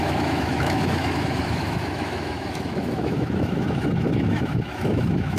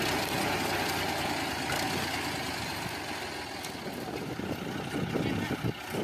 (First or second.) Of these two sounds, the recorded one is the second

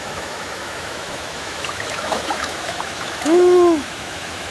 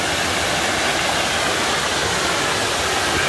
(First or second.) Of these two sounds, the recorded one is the second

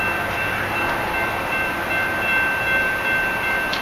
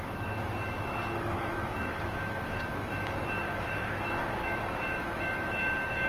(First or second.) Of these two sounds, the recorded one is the first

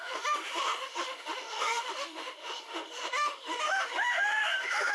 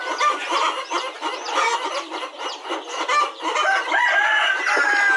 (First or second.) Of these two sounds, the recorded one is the second